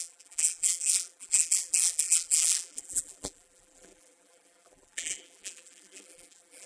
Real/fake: fake